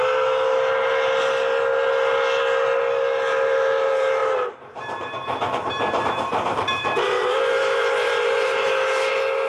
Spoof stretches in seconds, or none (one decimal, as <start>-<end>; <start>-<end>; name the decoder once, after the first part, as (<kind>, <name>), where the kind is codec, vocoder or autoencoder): 4.2-9.1 (vocoder, BigVGAN v2)